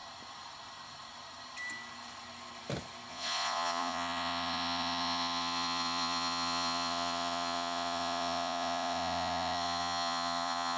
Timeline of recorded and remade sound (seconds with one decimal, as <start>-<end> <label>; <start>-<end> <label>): 0.0-3.1 recorded; 3.1-10.8 remade